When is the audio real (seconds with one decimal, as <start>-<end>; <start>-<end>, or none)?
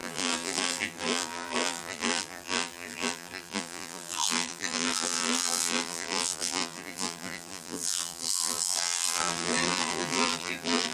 none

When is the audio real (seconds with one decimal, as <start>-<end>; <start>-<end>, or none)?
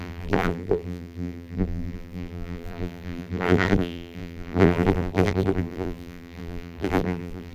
none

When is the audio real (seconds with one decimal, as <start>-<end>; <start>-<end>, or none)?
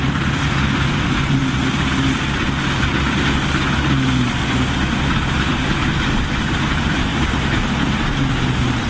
1.4-6.2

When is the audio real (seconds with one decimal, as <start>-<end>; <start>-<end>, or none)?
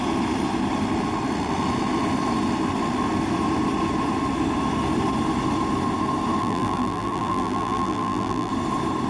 0.0-6.4; 8.5-9.1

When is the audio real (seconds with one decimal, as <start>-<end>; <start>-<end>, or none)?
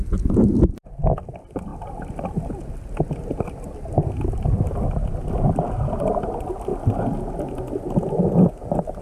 0.0-9.0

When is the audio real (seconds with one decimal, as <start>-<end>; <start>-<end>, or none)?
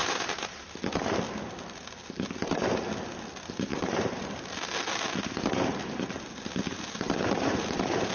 0.8-3.7; 4.4-8.1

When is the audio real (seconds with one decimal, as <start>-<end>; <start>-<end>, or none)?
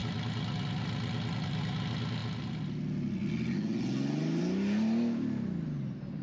1.6-6.2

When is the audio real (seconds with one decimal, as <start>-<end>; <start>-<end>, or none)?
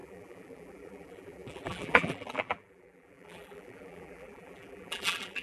none